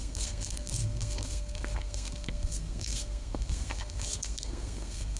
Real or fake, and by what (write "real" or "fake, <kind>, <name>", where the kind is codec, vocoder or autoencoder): fake, codec, SNAC